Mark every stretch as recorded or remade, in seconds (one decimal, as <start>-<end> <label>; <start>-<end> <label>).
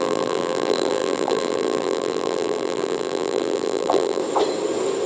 0.0-4.2 remade; 4.2-5.1 recorded